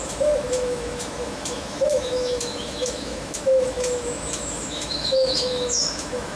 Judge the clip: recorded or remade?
remade